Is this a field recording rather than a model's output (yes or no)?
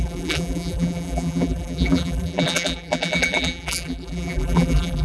no